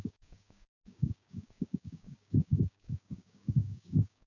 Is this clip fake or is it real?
fake